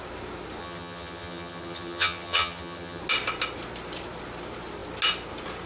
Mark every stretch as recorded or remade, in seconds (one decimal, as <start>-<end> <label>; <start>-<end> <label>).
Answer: 0.0-0.6 recorded; 0.6-3.0 remade; 3.0-5.7 recorded